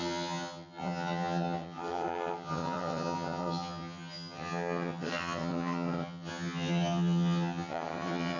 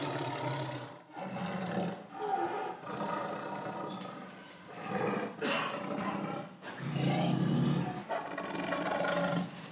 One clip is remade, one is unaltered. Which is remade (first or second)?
first